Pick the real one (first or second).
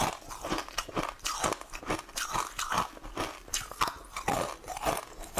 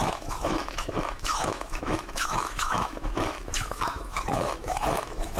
first